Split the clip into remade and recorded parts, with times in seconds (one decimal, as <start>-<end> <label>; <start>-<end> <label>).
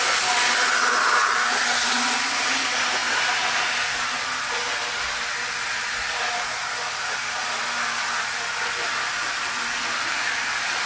0.0-10.9 recorded